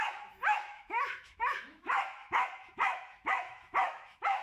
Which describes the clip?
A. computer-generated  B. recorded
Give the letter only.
A